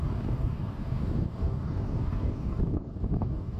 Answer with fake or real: fake